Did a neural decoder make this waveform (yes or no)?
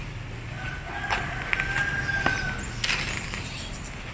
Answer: no